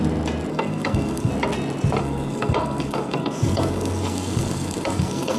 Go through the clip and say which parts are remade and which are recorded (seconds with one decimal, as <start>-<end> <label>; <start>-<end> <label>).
0.0-0.5 recorded; 0.5-1.3 remade; 1.3-2.0 recorded; 2.0-5.4 remade